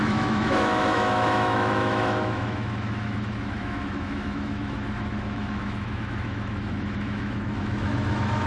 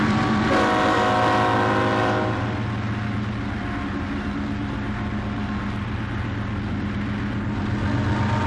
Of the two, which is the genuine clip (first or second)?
second